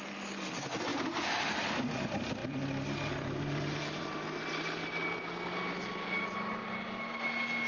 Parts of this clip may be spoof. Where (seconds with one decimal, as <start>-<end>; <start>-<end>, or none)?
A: none